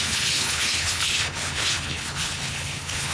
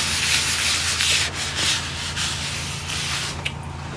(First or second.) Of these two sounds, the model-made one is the first